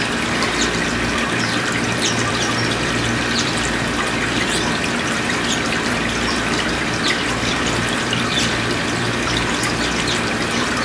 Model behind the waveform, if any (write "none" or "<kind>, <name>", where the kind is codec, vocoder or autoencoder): vocoder, BigVGAN v2